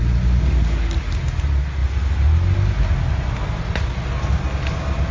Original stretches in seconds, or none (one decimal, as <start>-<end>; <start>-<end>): 0.0-5.1